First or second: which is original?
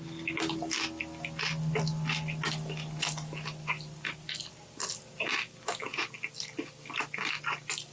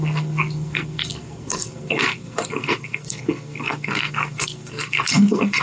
first